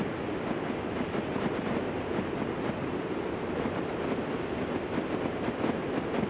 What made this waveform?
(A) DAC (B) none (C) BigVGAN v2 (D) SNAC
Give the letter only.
B